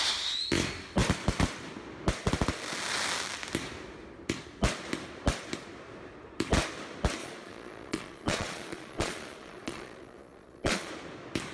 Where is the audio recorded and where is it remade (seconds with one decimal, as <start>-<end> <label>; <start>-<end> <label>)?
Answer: 0.0-7.2 recorded; 7.2-10.9 remade; 10.9-11.5 recorded